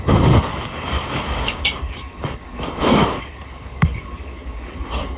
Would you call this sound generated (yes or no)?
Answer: yes